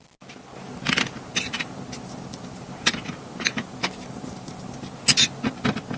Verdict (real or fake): real